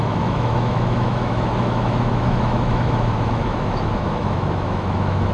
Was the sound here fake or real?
fake